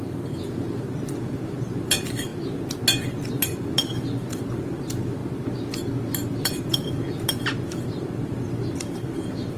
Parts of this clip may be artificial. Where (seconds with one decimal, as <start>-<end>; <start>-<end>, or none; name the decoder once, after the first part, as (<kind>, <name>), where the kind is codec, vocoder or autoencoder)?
0.0-2.3 (vocoder, BigVGAN v2); 3.3-5.2; 6.3-9.6